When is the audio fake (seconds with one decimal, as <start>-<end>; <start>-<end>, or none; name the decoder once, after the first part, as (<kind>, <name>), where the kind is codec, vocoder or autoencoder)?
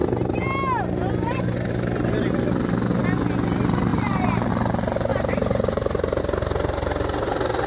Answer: 3.9-4.5 (vocoder, BigVGAN v2); 5.1-6.2